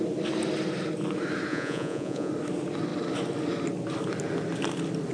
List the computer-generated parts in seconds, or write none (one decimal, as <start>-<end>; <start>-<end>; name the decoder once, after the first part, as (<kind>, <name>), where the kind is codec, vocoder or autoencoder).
1.5-2.3 (vocoder, Vocos)